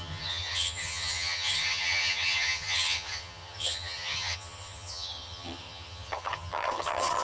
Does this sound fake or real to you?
fake